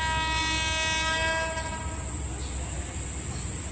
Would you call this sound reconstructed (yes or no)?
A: no